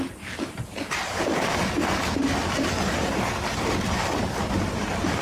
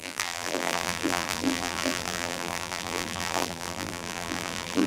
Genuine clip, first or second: first